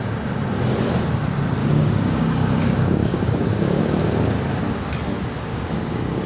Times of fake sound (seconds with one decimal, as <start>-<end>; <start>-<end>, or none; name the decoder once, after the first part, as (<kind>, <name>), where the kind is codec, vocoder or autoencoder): 1.6-3.8 (codec, DAC); 5.5-6.3